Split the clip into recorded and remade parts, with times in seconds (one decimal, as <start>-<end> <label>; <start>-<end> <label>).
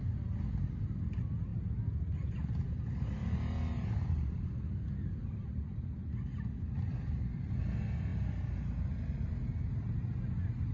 0.0-10.7 recorded